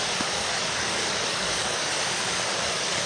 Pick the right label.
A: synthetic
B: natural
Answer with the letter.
A